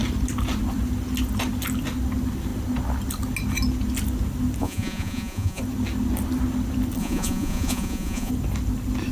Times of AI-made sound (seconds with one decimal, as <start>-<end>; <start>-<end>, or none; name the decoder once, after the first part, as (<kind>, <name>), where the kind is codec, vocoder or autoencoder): 4.6-5.6 (vocoder, Vocos); 7.0-8.3